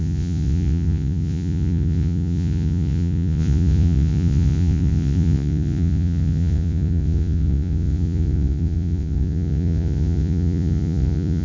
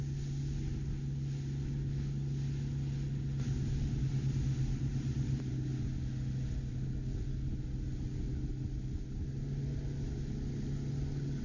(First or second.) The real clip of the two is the second